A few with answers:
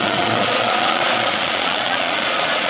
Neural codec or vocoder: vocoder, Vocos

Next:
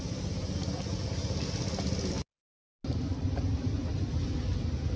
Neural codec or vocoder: none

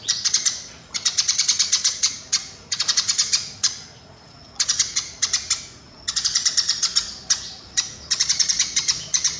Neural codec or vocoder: vocoder, Vocos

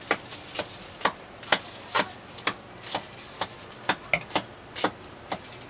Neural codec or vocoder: none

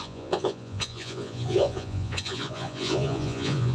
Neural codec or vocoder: vocoder, Vocos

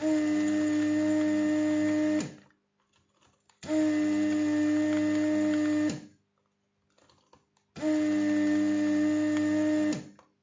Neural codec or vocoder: none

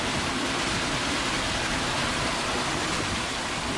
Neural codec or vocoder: none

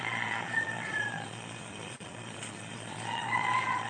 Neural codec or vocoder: vocoder, Vocos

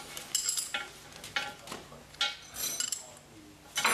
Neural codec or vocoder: none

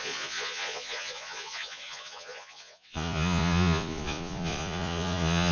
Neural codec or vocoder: vocoder, Vocos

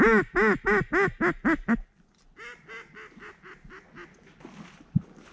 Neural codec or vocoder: none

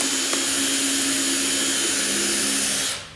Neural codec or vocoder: none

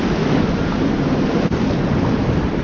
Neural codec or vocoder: none